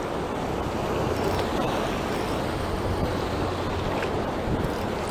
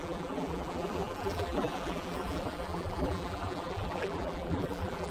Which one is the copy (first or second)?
second